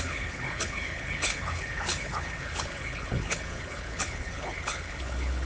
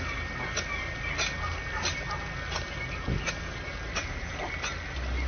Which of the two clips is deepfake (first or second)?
first